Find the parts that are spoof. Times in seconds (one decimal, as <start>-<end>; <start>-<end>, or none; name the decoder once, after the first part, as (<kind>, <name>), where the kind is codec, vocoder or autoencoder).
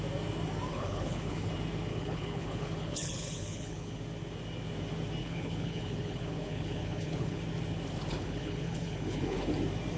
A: 0.7-1.5 (codec, HILCodec); 1.9-4.0; 5.2-7.4; 8.1-9.5